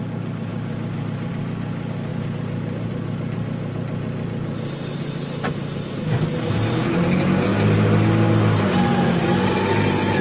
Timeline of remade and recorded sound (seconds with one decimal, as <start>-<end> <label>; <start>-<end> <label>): 0.0-10.2 recorded

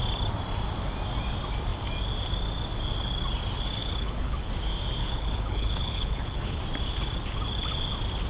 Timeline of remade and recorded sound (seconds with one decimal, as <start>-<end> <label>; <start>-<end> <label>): 0.0-3.8 recorded; 3.8-4.5 remade; 4.5-5.0 recorded; 5.0-6.6 remade; 6.6-8.3 recorded

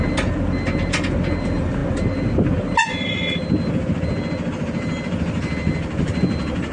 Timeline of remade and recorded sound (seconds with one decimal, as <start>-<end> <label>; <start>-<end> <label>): 0.0-6.7 recorded

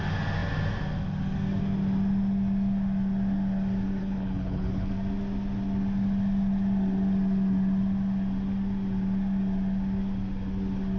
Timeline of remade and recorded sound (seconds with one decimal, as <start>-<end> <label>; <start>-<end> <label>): 0.0-4.0 recorded; 4.0-4.9 remade; 4.9-11.0 recorded

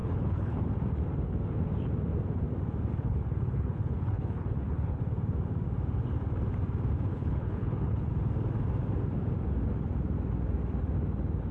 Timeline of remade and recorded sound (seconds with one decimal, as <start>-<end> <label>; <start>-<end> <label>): 0.0-0.6 remade; 0.6-2.9 recorded; 2.9-5.0 remade; 5.0-7.1 recorded; 7.1-8.1 remade; 8.1-11.5 recorded

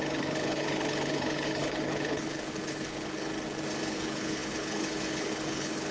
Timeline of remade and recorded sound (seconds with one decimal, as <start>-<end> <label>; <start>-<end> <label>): 0.0-3.3 remade; 3.3-3.9 recorded; 3.9-5.9 remade